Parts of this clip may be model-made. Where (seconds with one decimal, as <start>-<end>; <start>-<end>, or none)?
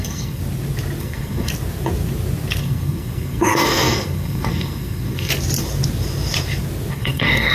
0.0-0.4; 1.0-1.5; 2.6-5.3; 6.9-7.5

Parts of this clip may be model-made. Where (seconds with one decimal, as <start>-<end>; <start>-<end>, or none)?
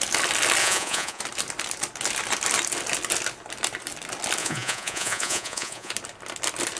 0.6-1.2; 4.4-5.9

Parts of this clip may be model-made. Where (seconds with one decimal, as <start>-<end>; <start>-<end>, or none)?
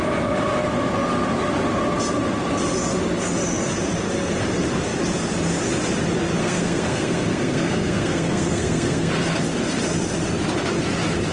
6.4-9.1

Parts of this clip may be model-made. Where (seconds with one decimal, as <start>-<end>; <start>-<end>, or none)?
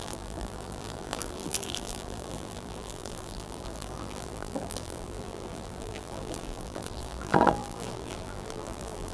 0.0-9.1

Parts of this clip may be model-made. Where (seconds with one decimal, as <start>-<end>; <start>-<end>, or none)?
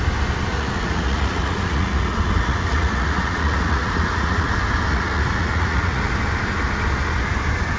0.5-4.5; 4.9-6.0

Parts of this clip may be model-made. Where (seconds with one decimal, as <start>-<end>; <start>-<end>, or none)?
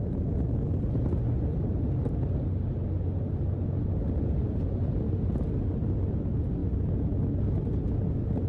none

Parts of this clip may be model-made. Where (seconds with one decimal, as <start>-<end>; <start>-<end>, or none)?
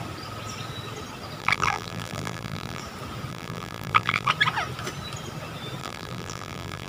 1.4-2.8; 3.3-4.3; 5.8-6.9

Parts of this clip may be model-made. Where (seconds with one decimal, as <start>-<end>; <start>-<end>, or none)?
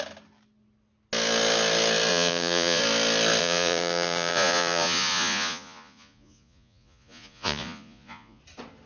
2.1-2.8; 3.4-8.4